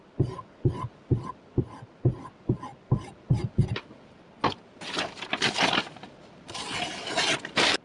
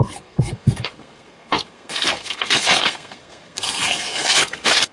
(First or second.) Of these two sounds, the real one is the first